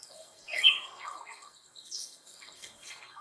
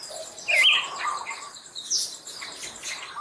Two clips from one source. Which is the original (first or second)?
second